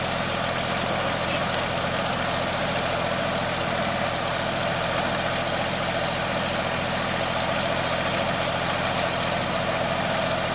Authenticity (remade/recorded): recorded